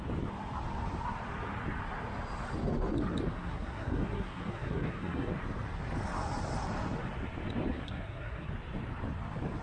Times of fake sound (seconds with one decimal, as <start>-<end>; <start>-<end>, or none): 3.3-5.3; 7.7-8.5